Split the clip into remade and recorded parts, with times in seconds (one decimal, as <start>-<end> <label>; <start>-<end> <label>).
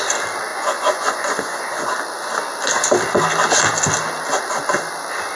0.0-0.5 recorded; 0.5-1.9 remade; 1.9-5.4 recorded